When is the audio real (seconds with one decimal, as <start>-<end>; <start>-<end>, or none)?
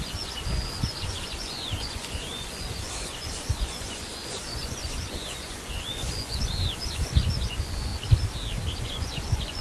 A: 7.9-8.8